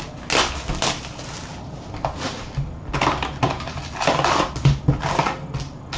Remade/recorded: recorded